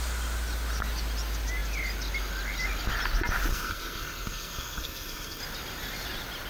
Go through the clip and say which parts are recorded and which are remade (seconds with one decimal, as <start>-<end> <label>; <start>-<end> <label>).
0.0-3.5 recorded; 3.5-5.4 remade; 5.4-6.5 recorded